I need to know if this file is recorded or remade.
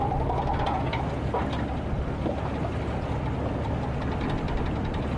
recorded